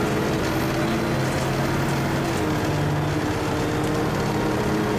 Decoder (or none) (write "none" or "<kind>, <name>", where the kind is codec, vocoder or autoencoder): none